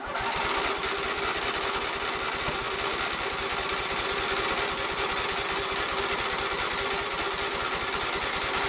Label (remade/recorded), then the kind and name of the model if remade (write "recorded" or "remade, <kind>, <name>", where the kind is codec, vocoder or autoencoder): recorded